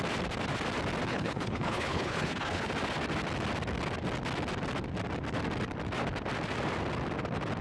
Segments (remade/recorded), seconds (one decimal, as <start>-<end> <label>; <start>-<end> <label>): 0.0-1.1 recorded; 1.1-2.7 remade; 2.7-7.6 recorded